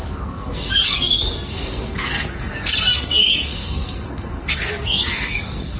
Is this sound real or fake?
fake